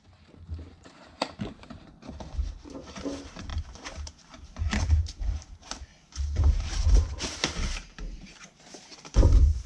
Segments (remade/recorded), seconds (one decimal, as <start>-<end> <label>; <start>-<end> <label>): 0.0-5.9 remade; 5.9-7.6 recorded; 7.6-9.7 remade

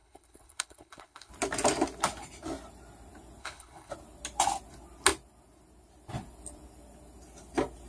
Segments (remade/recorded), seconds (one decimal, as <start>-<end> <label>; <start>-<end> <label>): 0.0-1.3 remade; 1.3-3.4 recorded; 3.4-3.9 remade; 3.9-7.9 recorded

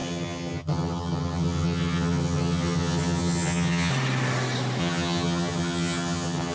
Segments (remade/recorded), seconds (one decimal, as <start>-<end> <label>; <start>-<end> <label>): 0.0-3.9 remade; 3.9-4.8 recorded; 4.8-6.5 remade

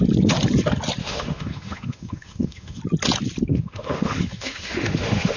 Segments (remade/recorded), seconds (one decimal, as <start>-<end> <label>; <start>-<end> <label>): 0.0-1.0 recorded; 1.0-2.8 remade; 2.8-3.5 recorded; 3.5-5.4 remade

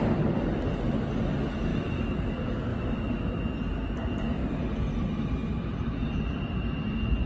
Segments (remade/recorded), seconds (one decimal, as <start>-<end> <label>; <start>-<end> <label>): 0.0-1.7 recorded; 1.7-2.3 remade; 2.3-2.7 recorded; 2.7-3.4 remade; 3.4-7.3 recorded

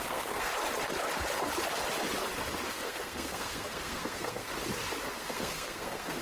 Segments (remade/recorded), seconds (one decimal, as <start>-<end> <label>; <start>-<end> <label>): 0.0-0.5 remade; 0.5-2.7 recorded; 2.7-4.5 remade; 4.5-5.1 recorded; 5.1-6.2 remade